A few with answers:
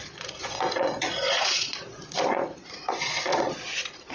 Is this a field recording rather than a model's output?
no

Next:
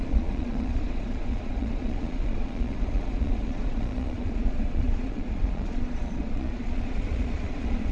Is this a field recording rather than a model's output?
no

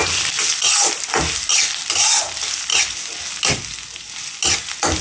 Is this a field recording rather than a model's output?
yes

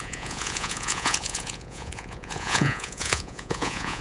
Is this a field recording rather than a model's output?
no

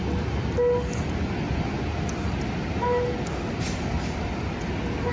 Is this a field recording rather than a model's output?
yes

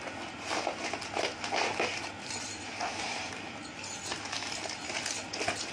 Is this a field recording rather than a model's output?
yes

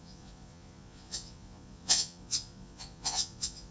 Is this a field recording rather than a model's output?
no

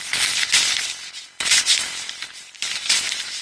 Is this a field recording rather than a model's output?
yes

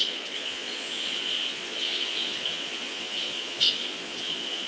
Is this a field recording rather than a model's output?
no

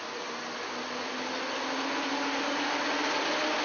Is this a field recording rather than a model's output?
yes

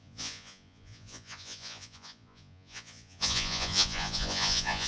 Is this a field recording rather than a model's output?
no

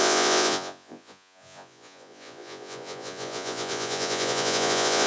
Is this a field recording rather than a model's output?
no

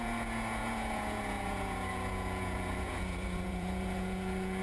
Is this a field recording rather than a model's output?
no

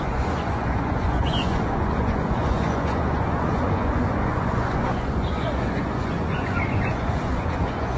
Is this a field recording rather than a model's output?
no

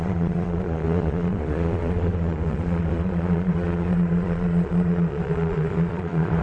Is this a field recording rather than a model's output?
no